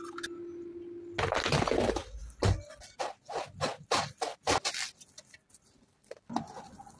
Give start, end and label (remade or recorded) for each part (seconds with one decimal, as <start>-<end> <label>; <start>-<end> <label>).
0.0-7.0 recorded